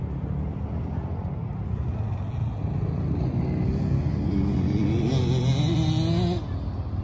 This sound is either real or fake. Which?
real